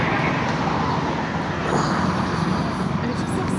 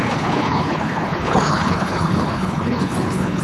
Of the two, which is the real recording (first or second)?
first